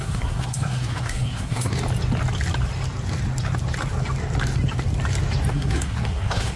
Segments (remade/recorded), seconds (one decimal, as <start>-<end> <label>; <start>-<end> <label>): 0.0-1.7 remade; 1.7-5.5 recorded; 5.5-6.6 remade